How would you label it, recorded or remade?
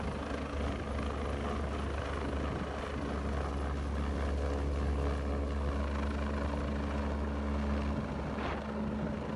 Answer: recorded